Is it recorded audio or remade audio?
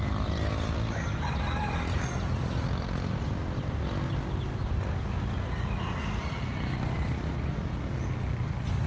recorded